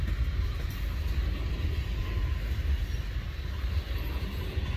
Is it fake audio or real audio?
real